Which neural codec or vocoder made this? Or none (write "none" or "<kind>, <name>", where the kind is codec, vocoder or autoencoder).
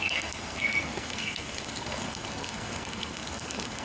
codec, SNAC